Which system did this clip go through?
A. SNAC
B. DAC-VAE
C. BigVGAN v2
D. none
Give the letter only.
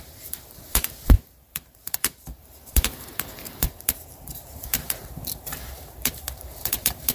C